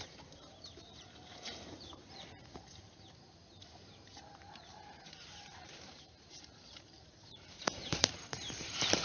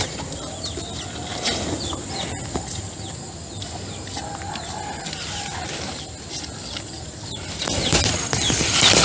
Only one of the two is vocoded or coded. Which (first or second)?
first